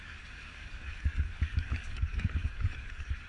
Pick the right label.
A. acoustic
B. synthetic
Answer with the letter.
B